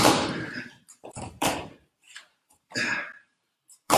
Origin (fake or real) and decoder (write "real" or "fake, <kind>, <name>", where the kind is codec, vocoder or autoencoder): fake, vocoder, BigVGAN v2